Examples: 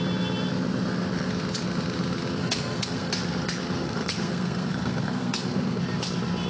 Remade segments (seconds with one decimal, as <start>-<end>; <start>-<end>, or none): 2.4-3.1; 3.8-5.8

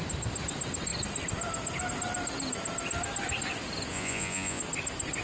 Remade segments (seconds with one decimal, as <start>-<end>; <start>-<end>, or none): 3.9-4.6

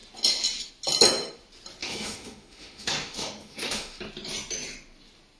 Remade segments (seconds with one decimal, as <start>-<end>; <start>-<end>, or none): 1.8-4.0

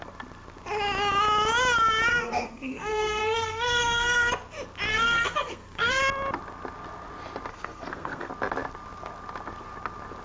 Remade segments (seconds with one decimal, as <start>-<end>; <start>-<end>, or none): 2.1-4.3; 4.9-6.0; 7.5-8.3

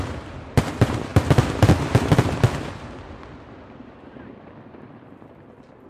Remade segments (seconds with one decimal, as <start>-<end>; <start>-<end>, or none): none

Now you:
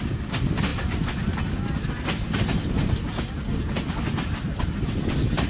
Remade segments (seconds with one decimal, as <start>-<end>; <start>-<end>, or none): none

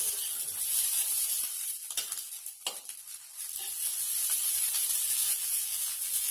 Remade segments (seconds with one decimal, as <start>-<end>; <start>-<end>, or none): 5.2-6.3

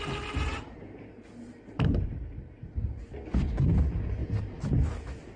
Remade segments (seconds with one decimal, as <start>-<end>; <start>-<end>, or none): 0.5-1.1; 1.5-2.7; 4.2-4.7